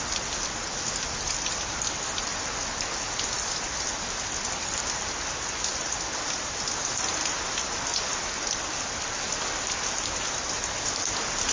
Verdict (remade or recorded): recorded